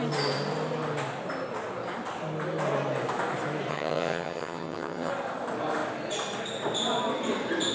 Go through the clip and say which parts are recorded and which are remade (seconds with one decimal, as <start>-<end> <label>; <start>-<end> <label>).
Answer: 0.0-3.7 recorded; 3.7-5.1 remade; 5.1-7.7 recorded